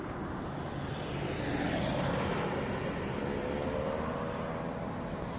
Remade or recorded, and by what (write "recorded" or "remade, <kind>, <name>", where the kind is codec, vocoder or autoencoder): recorded